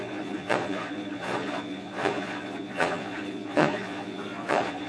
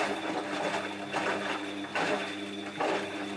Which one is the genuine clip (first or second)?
second